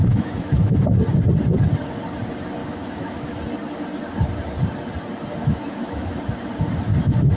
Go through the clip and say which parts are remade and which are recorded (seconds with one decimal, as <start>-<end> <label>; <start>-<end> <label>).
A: 0.0-0.8 remade; 0.8-2.6 recorded; 2.6-3.4 remade; 3.4-5.4 recorded; 5.4-6.2 remade; 6.2-7.4 recorded